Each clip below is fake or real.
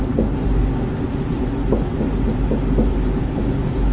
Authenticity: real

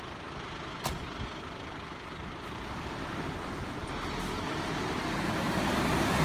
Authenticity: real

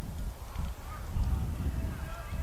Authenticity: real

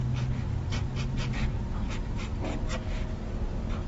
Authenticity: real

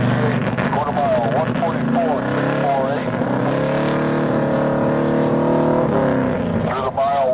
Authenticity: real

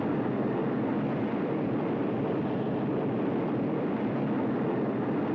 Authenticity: real